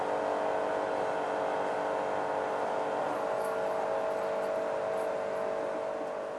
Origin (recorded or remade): recorded